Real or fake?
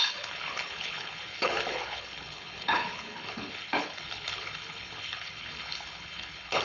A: fake